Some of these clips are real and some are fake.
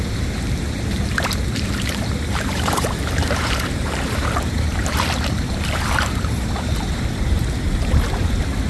fake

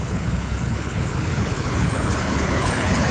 fake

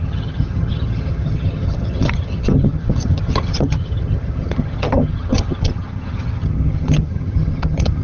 fake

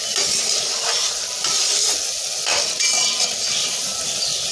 real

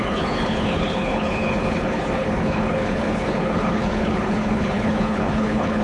fake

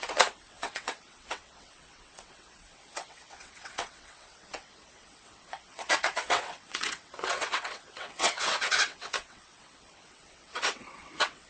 fake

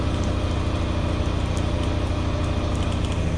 real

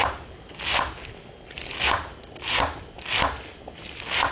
real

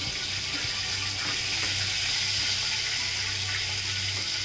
real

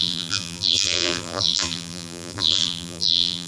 fake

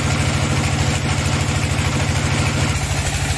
real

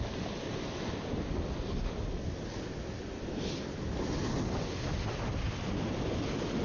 real